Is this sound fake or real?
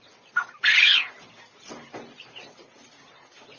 real